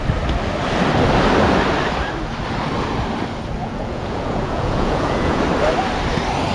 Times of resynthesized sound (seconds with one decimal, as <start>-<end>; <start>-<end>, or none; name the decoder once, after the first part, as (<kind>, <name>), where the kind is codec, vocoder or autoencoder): 3.6-5.4 (vocoder, Vocos)